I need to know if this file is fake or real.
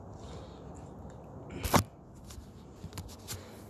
real